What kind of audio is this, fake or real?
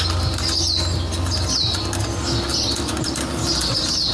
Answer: real